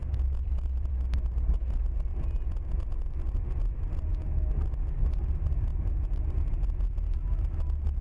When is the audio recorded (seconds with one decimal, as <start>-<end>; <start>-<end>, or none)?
0.9-4.1; 4.9-5.7; 6.8-8.0

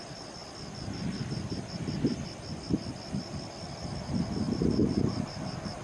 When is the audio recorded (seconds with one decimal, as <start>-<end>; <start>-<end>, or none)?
0.0-5.8

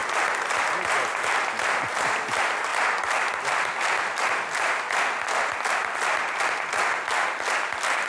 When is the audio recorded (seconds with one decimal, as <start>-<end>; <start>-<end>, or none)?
0.0-8.1

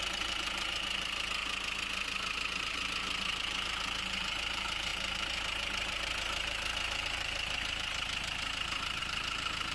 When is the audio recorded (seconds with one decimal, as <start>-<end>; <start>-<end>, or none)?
1.4-2.6